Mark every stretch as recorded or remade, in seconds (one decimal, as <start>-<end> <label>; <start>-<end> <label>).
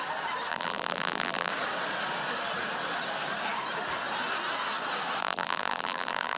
0.0-0.5 recorded; 0.5-1.5 remade; 1.5-5.2 recorded; 5.2-6.4 remade